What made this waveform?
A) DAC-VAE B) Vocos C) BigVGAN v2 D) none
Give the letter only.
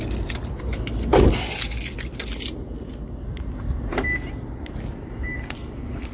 D